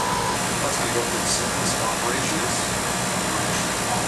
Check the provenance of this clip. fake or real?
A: real